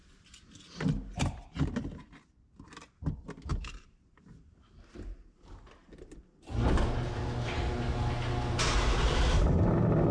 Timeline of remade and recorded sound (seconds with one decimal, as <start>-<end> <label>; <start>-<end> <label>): 0.0-3.5 recorded; 3.5-4.0 remade; 4.0-10.1 recorded